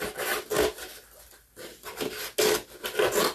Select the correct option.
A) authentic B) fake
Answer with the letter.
A